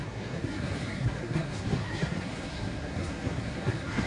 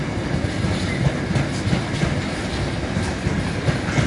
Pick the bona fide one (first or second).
second